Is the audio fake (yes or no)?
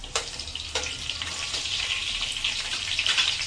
no